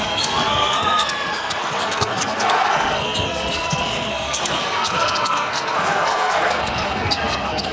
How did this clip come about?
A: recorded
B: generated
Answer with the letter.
B